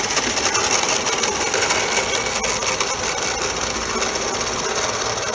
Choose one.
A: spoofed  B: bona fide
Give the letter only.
B